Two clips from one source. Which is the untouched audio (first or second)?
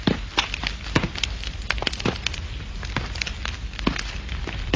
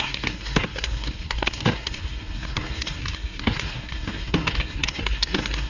first